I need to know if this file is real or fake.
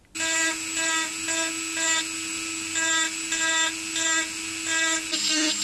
real